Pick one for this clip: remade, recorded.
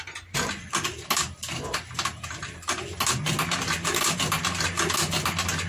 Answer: recorded